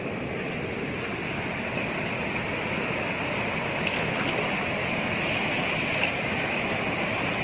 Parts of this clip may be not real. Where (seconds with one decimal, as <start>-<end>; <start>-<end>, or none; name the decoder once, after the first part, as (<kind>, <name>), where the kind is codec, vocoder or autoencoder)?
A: 4.8-5.6 (autoencoder, DAC-VAE); 6.0-6.8